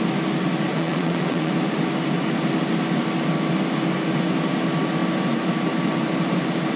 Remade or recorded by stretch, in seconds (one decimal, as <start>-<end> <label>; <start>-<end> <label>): 0.0-0.7 recorded; 0.7-1.5 remade; 1.5-6.8 recorded